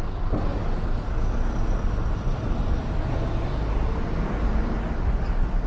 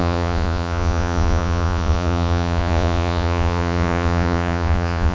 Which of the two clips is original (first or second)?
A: first